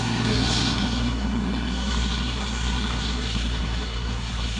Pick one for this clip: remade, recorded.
remade